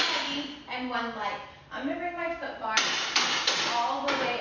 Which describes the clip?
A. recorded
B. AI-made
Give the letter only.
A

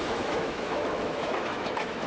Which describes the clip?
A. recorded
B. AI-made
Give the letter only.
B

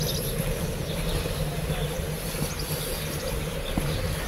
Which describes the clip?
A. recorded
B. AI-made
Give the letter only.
A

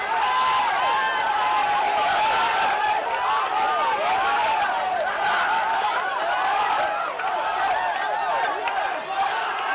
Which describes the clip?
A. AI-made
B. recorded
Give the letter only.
B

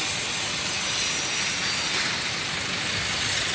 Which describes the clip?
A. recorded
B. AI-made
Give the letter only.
A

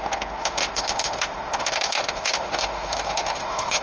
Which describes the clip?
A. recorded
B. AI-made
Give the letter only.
B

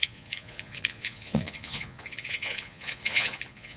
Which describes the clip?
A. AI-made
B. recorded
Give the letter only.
A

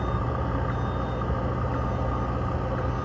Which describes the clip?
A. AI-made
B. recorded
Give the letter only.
B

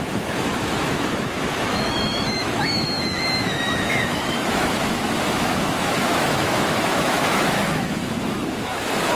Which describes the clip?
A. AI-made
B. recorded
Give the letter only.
A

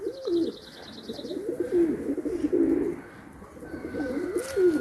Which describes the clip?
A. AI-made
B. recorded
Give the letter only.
B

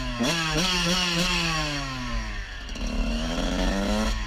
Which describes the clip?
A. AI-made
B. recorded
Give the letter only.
A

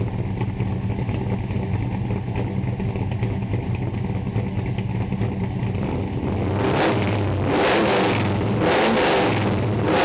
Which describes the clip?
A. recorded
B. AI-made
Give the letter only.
A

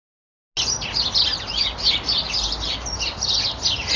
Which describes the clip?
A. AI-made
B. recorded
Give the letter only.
B